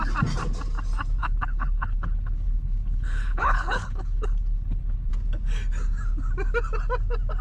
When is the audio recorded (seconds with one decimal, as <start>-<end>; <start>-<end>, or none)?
0.0-1.2; 5.1-7.4